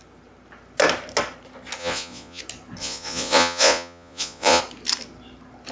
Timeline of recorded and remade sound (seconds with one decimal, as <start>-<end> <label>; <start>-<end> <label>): 0.0-1.8 recorded; 1.8-2.4 remade; 2.4-2.8 recorded; 2.8-4.6 remade; 4.6-5.7 recorded